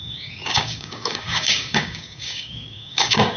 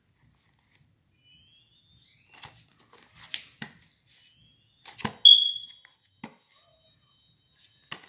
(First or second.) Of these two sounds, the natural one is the second